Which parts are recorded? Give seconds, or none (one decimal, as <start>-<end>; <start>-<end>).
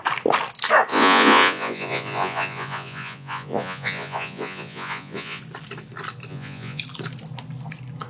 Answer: 0.0-0.9; 5.4-6.3; 6.8-8.1